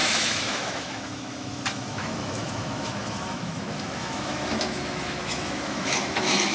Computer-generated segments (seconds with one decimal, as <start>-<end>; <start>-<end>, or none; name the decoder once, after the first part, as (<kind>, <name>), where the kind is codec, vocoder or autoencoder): 0.0-6.5 (autoencoder, DAC-VAE)